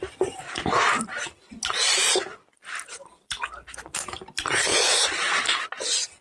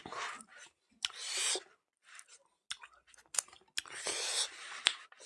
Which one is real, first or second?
second